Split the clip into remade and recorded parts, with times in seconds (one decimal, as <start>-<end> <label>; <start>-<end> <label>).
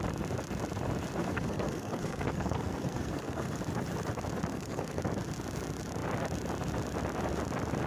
0.0-1.2 recorded; 1.2-3.6 remade; 3.6-4.5 recorded; 4.5-5.0 remade; 5.0-7.9 recorded